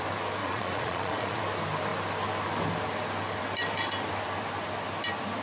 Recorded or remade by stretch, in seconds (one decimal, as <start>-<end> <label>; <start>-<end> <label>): 0.0-0.4 recorded; 0.4-1.4 remade; 1.4-5.4 recorded